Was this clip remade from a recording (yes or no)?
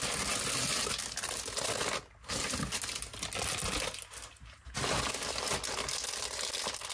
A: no